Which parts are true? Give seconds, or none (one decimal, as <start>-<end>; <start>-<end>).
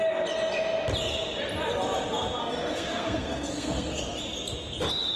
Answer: 0.0-2.4; 4.0-5.2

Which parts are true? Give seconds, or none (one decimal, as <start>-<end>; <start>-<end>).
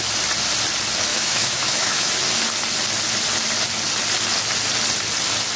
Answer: 0.0-1.1; 2.1-5.6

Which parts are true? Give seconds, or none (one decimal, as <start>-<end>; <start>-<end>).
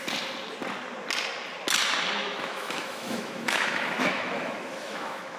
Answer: 0.0-2.2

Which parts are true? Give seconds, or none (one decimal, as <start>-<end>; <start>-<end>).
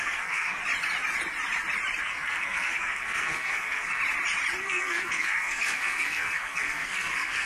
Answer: 0.6-2.0; 4.0-4.6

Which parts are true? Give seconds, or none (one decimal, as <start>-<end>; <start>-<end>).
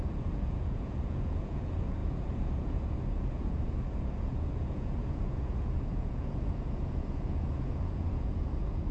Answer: none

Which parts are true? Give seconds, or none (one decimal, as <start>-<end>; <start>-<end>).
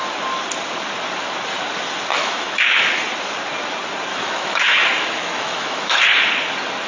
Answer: 0.0-2.1; 3.0-4.1; 6.0-6.9